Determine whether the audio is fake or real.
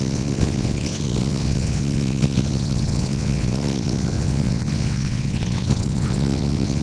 fake